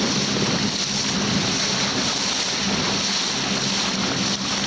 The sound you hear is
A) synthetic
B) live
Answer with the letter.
B